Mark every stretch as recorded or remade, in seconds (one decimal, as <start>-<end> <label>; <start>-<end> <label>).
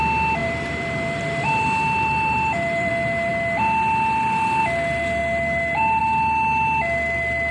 0.0-0.4 recorded; 0.4-2.9 remade; 2.9-7.5 recorded